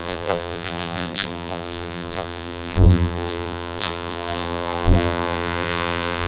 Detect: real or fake fake